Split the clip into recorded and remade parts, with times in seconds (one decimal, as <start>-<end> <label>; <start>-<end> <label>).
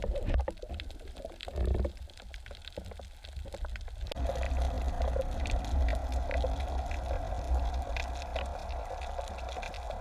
0.0-10.0 recorded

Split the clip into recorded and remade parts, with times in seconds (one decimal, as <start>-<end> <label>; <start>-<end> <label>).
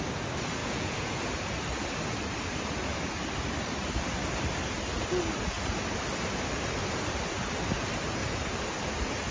0.0-0.6 recorded; 0.6-1.2 remade; 1.2-9.3 recorded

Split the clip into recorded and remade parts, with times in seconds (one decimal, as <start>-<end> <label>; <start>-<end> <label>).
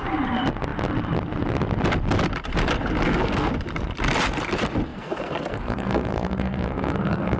0.0-3.0 recorded; 3.0-3.5 remade; 3.5-4.9 recorded; 4.9-7.4 remade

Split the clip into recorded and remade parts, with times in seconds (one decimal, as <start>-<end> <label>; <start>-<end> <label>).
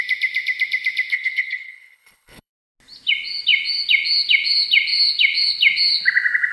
0.0-1.1 recorded; 1.1-2.5 remade; 2.5-6.5 recorded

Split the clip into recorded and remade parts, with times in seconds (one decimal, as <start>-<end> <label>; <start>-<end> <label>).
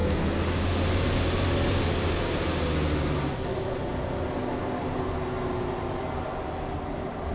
0.0-7.3 recorded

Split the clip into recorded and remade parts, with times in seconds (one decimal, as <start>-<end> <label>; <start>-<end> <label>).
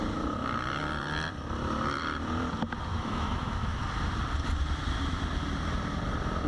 0.0-2.9 recorded; 2.9-3.8 remade; 3.8-6.5 recorded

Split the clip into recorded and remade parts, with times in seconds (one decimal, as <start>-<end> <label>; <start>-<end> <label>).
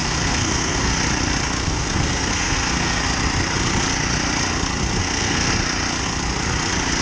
0.0-0.9 remade; 0.9-1.6 recorded; 1.6-3.0 remade; 3.0-5.0 recorded; 5.0-5.5 remade; 5.5-7.0 recorded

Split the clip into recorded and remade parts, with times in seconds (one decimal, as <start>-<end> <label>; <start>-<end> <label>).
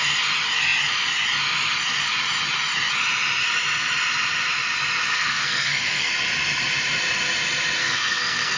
0.0-5.1 recorded; 5.1-6.1 remade; 6.1-7.8 recorded; 7.8-8.6 remade